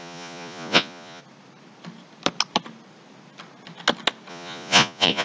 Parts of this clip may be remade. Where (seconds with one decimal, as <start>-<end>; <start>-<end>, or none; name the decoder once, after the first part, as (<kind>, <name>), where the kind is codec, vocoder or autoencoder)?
0.0-1.2 (vocoder, Vocos); 4.3-5.2